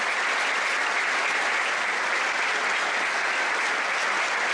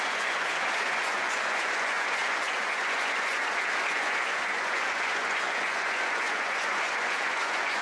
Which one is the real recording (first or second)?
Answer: first